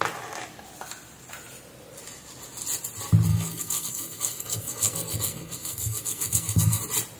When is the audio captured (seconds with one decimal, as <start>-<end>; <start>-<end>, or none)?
0.0-3.3; 6.8-7.2